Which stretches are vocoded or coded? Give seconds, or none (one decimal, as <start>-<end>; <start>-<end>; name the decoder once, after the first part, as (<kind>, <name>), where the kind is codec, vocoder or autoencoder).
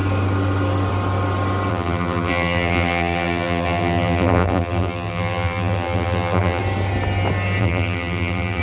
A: 1.7-6.6 (vocoder, BigVGAN v2); 7.6-8.6